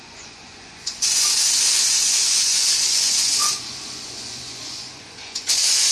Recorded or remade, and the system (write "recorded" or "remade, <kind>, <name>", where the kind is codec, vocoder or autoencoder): remade, vocoder, Vocos